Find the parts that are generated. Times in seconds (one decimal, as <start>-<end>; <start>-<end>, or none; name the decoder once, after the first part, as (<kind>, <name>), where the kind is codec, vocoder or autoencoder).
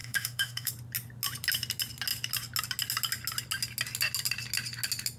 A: 0.0-0.7 (autoencoder, DAC-VAE)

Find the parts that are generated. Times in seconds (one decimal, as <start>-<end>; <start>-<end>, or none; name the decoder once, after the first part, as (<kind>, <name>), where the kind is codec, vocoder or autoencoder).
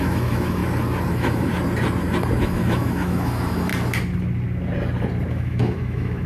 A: 0.0-0.6 (autoencoder, DAC-VAE); 1.1-1.5; 2.4-3.7; 5.3-6.3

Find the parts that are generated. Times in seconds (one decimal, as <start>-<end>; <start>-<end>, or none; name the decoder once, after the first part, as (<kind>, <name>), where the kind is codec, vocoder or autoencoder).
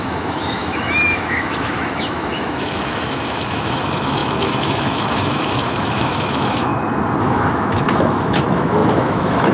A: 0.0-6.7 (autoencoder, DAC-VAE); 7.2-9.5